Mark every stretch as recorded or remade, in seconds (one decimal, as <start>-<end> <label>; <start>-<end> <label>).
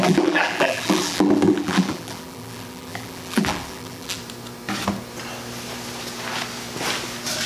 0.0-4.2 remade; 4.2-7.5 recorded